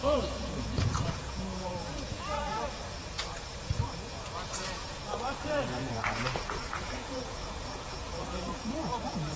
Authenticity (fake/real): fake